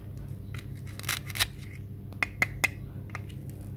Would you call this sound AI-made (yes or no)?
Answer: no